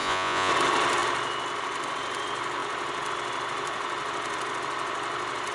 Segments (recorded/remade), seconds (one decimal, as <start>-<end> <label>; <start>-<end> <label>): 0.0-0.5 remade; 0.5-5.5 recorded

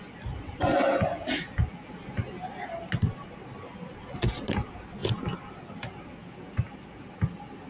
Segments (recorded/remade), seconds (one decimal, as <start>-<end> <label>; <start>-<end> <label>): 0.0-7.7 recorded

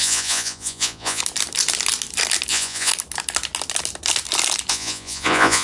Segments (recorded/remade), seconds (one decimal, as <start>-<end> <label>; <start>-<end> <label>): 0.0-1.2 remade; 1.2-2.5 recorded; 2.5-2.9 remade; 2.9-4.7 recorded; 4.7-5.6 remade

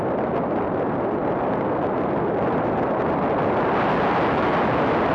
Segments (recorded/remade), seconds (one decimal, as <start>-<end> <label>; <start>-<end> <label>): 0.0-5.1 recorded